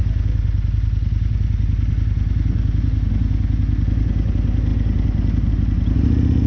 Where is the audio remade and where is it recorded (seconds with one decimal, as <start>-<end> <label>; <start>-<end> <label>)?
0.0-3.1 remade; 3.1-6.5 recorded

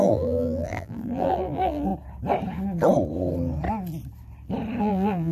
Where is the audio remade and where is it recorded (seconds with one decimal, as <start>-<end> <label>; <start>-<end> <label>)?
0.0-1.9 remade; 1.9-4.8 recorded; 4.8-5.3 remade

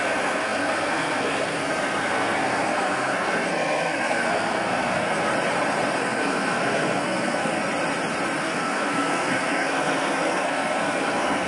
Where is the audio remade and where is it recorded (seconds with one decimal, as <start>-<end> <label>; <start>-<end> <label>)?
0.0-5.3 remade; 5.3-6.0 recorded; 6.0-7.6 remade; 7.6-8.4 recorded; 8.4-11.5 remade

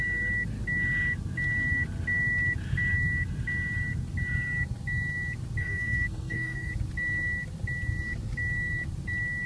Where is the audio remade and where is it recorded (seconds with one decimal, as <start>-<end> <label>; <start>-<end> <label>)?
0.0-5.6 recorded; 5.6-6.7 remade; 6.7-9.5 recorded

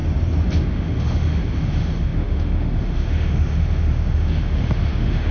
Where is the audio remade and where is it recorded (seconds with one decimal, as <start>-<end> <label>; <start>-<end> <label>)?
0.0-0.7 recorded; 0.7-5.3 remade